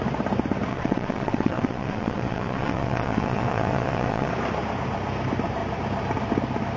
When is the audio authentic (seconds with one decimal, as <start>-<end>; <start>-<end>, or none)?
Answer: 0.0-0.7; 4.3-6.8